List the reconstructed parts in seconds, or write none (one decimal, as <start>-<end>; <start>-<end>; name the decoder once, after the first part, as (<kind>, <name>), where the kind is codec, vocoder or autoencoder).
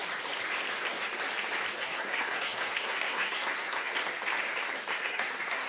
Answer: 1.8-3.9 (codec, SNAC); 5.0-5.7